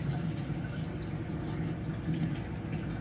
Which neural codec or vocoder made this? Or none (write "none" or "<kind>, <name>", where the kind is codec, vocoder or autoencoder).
none